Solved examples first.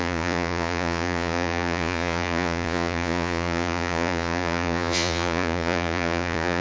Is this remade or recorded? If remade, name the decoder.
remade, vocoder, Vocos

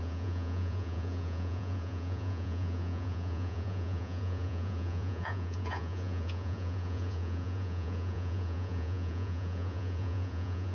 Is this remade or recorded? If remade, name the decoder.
remade, vocoder, Vocos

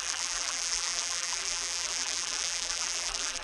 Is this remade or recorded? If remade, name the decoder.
remade, vocoder, BigVGAN v2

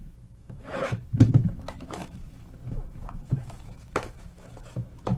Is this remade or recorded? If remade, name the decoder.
remade, autoencoder, DAC-VAE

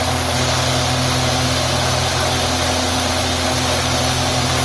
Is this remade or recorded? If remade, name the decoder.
recorded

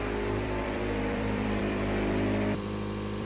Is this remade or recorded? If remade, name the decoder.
remade, vocoder, BigVGAN v2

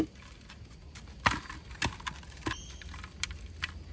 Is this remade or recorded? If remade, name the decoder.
recorded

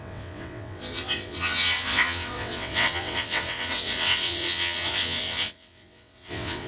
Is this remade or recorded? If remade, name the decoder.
remade, vocoder, WaveNeXt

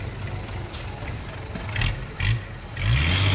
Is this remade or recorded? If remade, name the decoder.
recorded